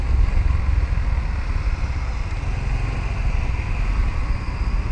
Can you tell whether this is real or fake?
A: real